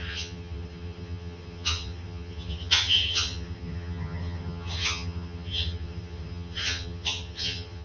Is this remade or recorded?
remade